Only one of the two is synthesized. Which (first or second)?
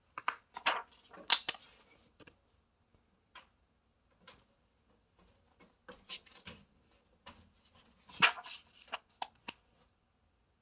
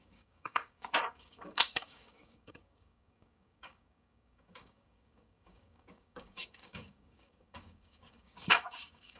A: second